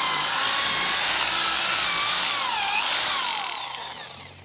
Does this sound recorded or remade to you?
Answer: recorded